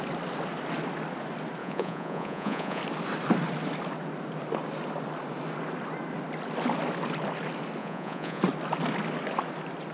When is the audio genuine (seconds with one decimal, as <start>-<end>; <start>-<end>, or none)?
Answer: 0.0-1.6; 2.8-7.8; 8.4-9.9